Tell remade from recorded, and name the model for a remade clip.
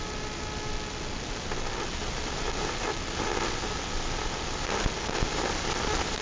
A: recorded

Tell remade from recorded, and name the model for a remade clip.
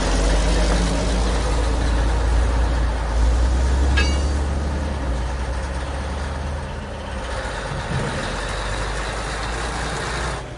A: recorded